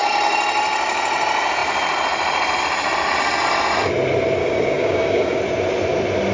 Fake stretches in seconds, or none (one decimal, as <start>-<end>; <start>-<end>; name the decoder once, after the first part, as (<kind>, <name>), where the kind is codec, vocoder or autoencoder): 4.4-5.4 (codec, DAC)